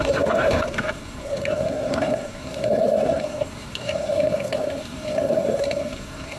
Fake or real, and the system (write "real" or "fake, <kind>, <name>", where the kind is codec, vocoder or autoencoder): fake, codec, SNAC